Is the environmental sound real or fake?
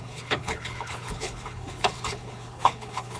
fake